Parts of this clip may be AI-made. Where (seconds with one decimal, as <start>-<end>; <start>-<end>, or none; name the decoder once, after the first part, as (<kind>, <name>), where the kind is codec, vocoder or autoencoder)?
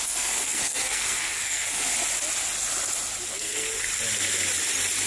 0.0-1.9 (codec, SNAC); 3.3-3.7